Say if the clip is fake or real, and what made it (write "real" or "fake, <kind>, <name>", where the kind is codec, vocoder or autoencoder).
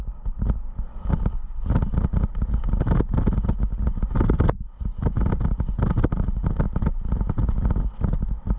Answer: real